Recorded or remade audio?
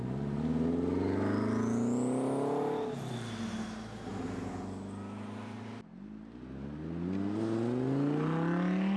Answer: recorded